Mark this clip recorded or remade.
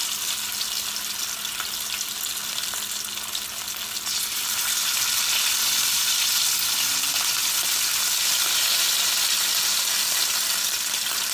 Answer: recorded